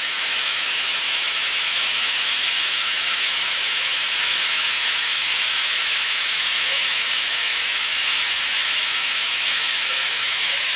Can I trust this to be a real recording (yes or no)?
no